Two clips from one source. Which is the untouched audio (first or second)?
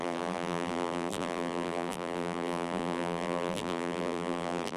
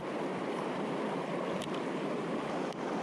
second